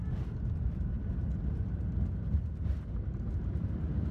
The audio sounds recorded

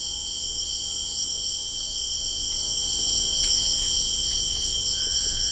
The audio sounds remade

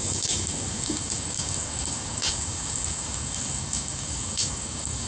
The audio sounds remade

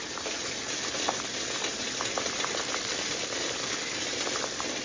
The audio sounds recorded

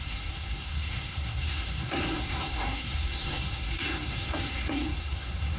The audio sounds remade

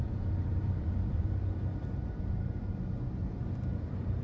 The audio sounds remade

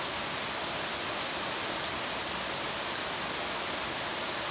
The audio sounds recorded